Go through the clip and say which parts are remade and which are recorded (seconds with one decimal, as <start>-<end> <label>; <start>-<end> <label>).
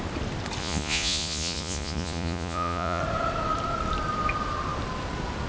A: 0.0-0.6 recorded; 0.6-3.0 remade; 3.0-5.5 recorded